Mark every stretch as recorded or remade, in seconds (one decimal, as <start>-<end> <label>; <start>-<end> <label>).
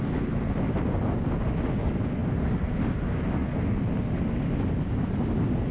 0.0-5.7 recorded